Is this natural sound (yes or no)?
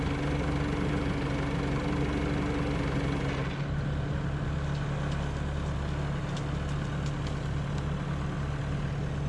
yes